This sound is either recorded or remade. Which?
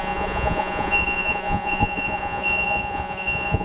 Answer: remade